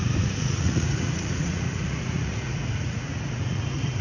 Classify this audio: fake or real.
fake